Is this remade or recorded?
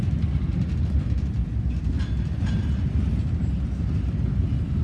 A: recorded